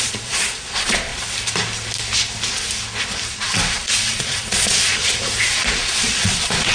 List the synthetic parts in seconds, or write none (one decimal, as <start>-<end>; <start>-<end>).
0.0-1.1; 3.3-5.0; 5.8-6.7